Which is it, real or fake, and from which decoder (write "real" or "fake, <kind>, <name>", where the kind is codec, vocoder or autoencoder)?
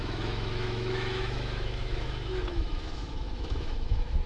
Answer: fake, autoencoder, DAC-VAE